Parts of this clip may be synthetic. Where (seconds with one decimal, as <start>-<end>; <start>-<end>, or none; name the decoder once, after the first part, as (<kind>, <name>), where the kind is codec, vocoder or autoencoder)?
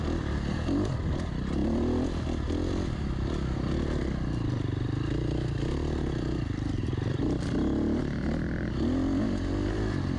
none